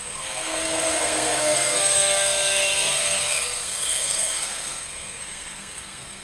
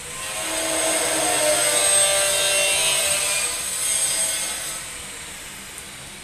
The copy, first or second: first